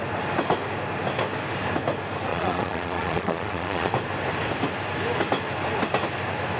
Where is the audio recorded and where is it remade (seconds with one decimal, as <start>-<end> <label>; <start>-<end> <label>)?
0.0-2.3 recorded; 2.3-3.9 remade; 3.9-6.6 recorded